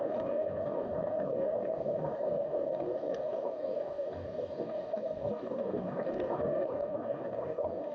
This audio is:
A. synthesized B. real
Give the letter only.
A